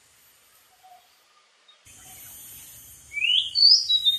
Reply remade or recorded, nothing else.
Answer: recorded